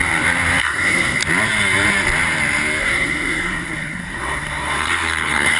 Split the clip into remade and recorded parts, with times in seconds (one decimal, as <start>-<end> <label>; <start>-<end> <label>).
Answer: 0.0-0.6 recorded; 0.6-1.2 remade; 1.2-2.8 recorded; 2.8-5.6 remade